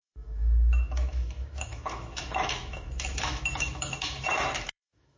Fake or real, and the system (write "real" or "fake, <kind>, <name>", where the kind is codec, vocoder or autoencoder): fake, autoencoder, DAC-VAE